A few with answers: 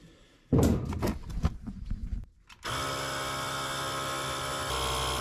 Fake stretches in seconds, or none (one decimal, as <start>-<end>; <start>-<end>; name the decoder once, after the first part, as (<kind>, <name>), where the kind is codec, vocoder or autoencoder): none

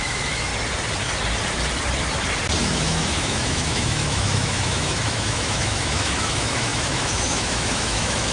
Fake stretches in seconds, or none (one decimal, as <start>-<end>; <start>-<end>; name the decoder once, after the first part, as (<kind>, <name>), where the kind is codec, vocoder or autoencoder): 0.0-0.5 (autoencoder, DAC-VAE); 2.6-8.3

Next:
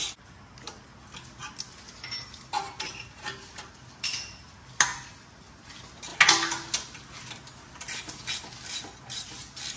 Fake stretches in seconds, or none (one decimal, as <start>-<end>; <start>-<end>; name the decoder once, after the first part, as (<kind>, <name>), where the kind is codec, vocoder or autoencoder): none

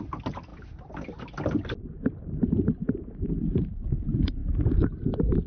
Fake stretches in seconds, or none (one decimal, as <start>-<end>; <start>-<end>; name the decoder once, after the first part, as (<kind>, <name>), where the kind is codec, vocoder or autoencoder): none

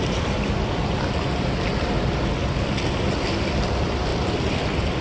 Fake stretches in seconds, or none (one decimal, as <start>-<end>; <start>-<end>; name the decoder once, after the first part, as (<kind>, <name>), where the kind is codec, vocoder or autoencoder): none